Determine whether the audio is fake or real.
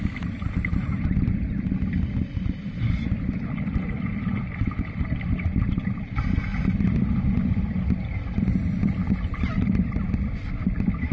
real